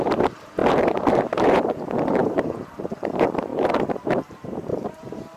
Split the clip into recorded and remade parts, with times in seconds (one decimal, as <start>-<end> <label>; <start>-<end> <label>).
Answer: 0.0-5.4 remade

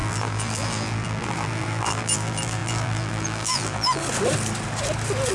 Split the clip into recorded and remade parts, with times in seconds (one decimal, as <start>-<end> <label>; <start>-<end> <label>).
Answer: 0.0-4.0 remade; 4.0-5.3 recorded

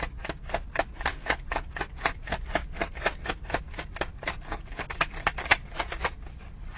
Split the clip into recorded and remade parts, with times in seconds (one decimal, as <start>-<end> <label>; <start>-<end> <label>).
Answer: 0.0-4.1 recorded; 4.1-4.9 remade; 4.9-6.8 recorded

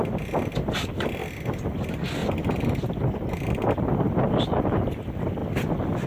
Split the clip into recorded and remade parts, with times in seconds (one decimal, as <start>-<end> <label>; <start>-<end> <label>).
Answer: 0.0-2.2 recorded; 2.2-3.3 remade; 3.3-6.1 recorded

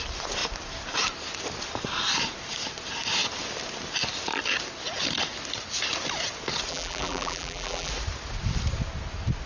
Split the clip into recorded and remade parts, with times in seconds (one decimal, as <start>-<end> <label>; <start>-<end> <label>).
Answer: 0.0-6.7 recorded; 6.7-7.9 remade; 7.9-9.5 recorded

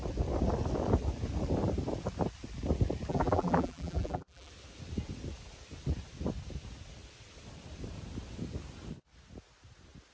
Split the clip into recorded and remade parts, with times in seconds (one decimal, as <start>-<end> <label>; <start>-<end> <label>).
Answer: 0.0-3.1 recorded; 3.1-4.5 remade; 4.5-10.1 recorded

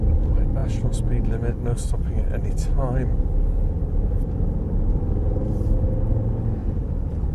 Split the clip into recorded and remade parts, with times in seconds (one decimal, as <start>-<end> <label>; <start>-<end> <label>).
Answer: 0.0-6.6 recorded; 6.6-7.3 remade